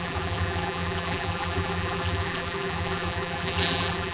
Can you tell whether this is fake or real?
fake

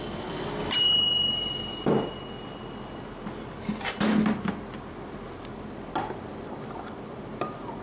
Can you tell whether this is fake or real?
real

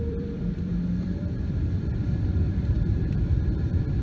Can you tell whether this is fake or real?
fake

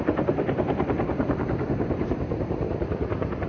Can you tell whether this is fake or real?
fake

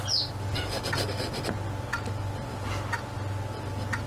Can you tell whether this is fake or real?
real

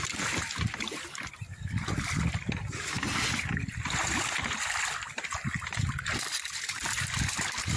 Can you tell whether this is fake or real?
fake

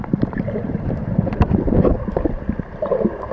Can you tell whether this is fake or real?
fake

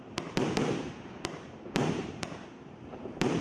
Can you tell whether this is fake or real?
fake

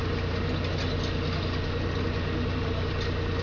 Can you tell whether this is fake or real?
real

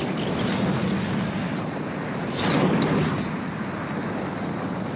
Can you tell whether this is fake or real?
fake